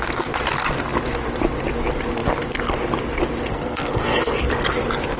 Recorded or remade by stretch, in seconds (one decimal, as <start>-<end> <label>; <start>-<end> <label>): 0.0-3.5 recorded; 3.5-4.3 remade; 4.3-5.2 recorded